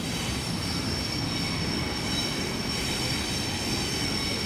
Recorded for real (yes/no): yes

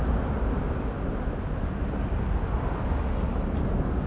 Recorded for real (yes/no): yes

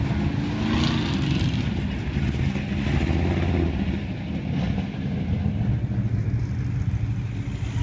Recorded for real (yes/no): yes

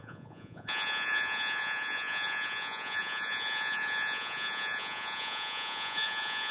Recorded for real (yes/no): no